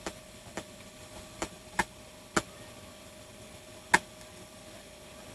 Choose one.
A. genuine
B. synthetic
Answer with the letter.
A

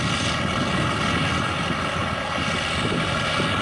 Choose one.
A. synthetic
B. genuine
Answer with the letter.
B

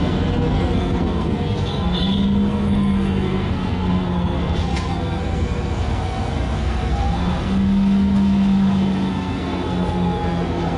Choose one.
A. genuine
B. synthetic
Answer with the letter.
B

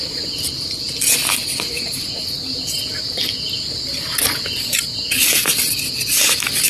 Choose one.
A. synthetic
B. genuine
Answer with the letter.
B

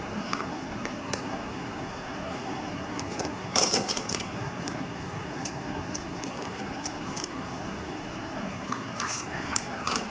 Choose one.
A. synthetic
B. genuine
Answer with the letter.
A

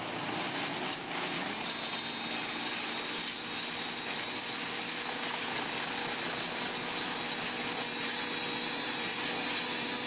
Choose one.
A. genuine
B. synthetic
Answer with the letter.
A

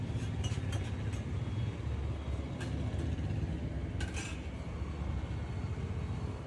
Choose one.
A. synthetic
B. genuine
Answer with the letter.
B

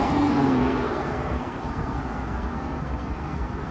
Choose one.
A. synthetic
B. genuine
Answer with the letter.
A